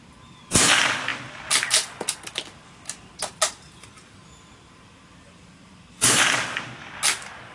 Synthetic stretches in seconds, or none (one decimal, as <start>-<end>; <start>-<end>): none